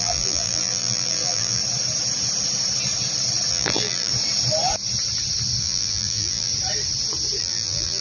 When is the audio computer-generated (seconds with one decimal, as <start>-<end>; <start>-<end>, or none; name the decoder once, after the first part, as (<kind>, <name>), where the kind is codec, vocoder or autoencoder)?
0.0-1.6 (vocoder, BigVGAN v2); 3.5-4.1; 5.6-6.5; 7.4-8.0